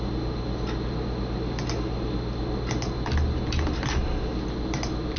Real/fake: real